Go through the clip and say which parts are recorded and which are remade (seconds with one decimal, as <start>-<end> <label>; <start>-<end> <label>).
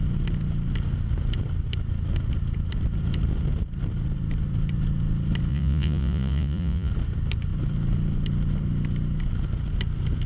0.0-5.5 recorded; 5.5-6.9 remade; 6.9-10.3 recorded